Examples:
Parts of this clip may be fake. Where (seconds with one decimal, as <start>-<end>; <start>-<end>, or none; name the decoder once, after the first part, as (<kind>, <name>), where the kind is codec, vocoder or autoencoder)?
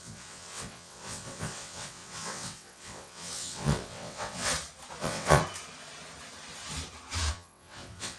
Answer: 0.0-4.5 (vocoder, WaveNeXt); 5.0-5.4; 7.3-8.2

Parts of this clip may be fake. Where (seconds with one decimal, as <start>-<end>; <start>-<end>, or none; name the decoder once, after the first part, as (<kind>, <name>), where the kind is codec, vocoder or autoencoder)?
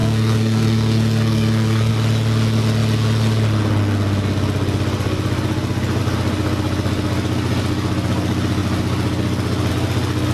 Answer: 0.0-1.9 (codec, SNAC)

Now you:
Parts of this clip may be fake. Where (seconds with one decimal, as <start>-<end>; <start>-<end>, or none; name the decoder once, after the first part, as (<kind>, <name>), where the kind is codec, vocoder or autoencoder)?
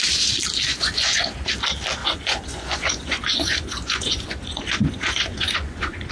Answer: 0.7-1.5 (vocoder, Vocos); 2.0-6.1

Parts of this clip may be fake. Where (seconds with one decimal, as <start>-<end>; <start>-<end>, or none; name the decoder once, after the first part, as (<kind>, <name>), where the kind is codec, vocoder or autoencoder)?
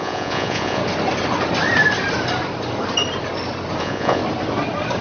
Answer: 0.0-0.8 (vocoder, Vocos); 3.8-4.2